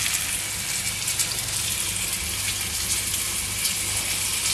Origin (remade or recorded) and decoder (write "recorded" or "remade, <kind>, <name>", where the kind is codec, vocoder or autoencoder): recorded